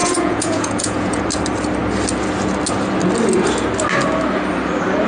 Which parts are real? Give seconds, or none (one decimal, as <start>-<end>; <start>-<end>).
1.2-5.1